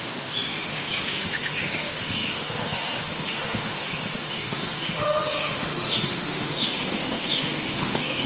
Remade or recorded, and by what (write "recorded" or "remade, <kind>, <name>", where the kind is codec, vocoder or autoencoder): remade, autoencoder, DAC-VAE